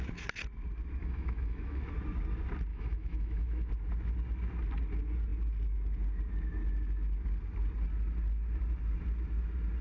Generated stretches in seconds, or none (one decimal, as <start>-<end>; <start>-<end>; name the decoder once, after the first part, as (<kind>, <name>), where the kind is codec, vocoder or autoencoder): 1.0-1.9 (autoencoder, DAC-VAE); 2.7-3.7